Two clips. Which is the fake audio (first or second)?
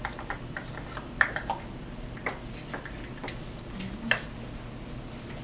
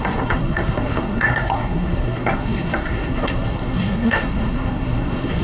second